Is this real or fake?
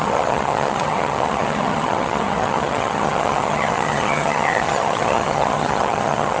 fake